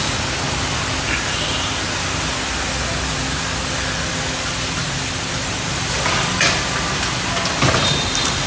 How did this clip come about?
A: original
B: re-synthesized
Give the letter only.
A